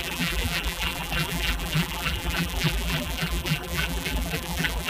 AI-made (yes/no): yes